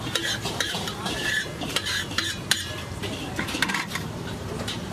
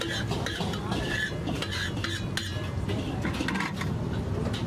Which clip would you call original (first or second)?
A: second